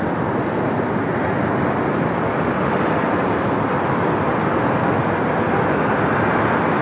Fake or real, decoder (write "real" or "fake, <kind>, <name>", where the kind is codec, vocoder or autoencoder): real